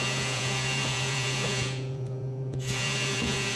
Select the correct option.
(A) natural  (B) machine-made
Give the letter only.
B